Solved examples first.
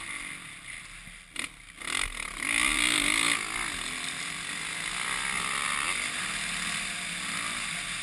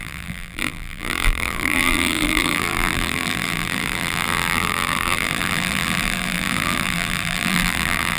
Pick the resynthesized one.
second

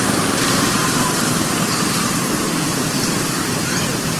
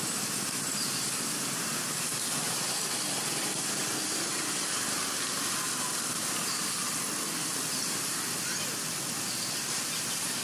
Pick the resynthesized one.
first